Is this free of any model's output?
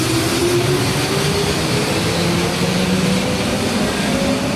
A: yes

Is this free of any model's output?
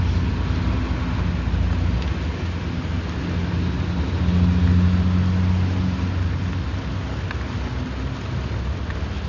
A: yes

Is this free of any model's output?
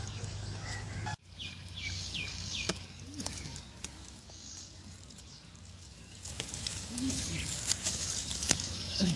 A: no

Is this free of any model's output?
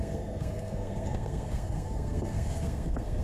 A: no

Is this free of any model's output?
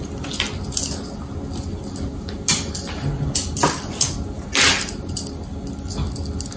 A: yes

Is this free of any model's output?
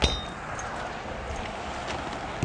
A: yes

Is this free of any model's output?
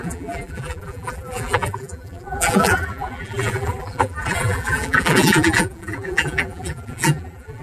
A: no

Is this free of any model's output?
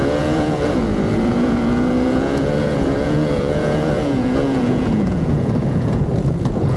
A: no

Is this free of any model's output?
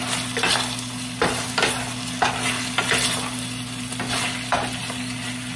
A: yes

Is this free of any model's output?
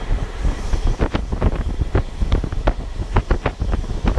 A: yes